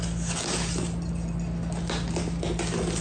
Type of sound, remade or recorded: recorded